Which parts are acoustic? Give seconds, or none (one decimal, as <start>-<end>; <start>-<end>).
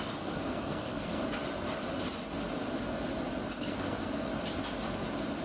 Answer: 1.2-3.6; 4.3-5.4